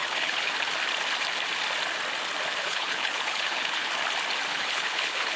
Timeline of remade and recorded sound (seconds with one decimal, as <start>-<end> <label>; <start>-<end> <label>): 0.0-0.5 remade; 0.5-2.6 recorded; 2.6-3.9 remade; 3.9-4.5 recorded; 4.5-5.4 remade

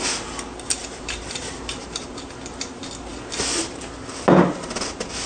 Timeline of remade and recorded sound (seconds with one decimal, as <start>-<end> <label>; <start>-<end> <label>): 0.0-0.8 recorded; 0.8-2.0 remade; 2.0-5.3 recorded

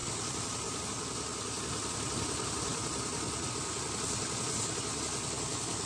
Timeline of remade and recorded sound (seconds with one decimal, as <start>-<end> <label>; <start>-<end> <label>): 0.0-5.9 recorded

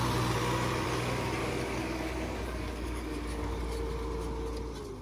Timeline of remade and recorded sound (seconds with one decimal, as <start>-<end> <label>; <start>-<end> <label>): 0.0-1.4 recorded; 1.4-3.6 remade; 3.6-5.0 recorded

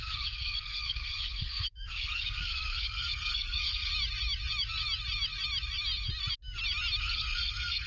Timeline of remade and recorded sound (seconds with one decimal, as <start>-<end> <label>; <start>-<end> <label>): 0.0-3.9 remade; 3.9-7.0 recorded; 7.0-7.9 remade

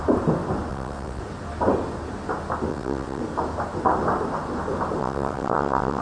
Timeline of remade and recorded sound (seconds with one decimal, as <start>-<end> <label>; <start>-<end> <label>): 0.0-0.7 recorded; 0.7-1.2 remade; 1.2-2.7 recorded; 2.7-3.2 remade; 3.2-5.0 recorded; 5.0-6.0 remade

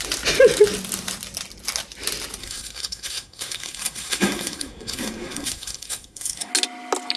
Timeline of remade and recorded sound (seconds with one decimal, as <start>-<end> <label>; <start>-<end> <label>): 0.0-2.4 recorded; 2.4-6.5 remade; 6.5-7.2 recorded

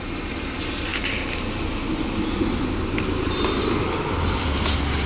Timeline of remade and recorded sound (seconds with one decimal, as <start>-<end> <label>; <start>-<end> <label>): 0.0-5.1 recorded